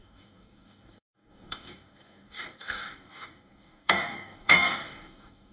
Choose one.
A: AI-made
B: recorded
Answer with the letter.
A